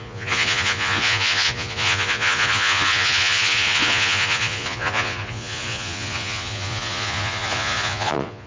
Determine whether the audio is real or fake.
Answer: fake